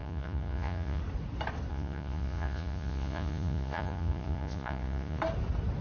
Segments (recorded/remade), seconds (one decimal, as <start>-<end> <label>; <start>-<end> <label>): 0.0-1.0 remade; 1.0-1.7 recorded; 1.7-5.2 remade; 5.2-5.8 recorded